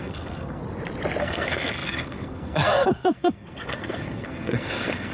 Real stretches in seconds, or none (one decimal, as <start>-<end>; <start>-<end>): 0.6-1.2